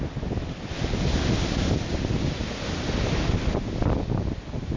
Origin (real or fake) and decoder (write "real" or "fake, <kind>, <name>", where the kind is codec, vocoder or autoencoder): real